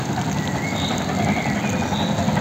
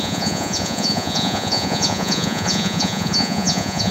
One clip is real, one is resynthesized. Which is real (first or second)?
first